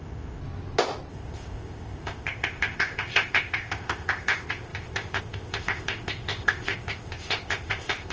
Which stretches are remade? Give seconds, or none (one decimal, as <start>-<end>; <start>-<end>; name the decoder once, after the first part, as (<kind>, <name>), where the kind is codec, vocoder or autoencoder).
0.0-0.4 (codec, ZipCodec); 1.1-8.1